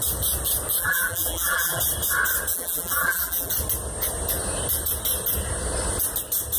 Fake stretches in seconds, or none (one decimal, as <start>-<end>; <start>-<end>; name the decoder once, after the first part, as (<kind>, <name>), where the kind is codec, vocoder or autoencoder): 0.8-1.8 (vocoder, BigVGAN v2); 2.5-3.5